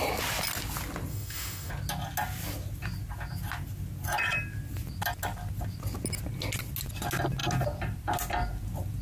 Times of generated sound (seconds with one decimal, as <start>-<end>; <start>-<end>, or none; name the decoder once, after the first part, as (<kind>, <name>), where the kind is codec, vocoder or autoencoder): 1.1-1.7 (autoencoder, DAC-VAE)